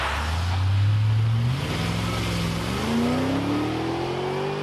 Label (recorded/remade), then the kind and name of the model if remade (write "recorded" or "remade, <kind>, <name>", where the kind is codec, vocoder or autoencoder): recorded